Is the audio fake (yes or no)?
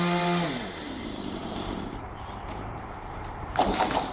yes